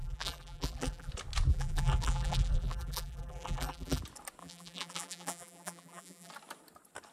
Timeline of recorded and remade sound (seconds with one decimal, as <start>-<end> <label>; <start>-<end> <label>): 0.0-1.1 remade; 1.1-1.5 recorded; 1.5-4.0 remade; 4.0-4.4 recorded; 4.4-6.3 remade; 6.3-7.1 recorded